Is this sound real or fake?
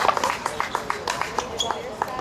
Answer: real